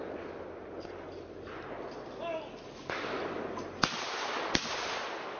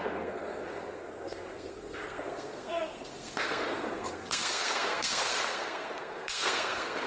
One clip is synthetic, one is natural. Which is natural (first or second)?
first